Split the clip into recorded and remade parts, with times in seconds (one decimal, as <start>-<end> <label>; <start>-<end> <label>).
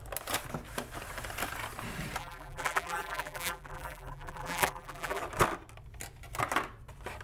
0.0-2.2 recorded; 2.2-5.2 remade; 5.2-7.2 recorded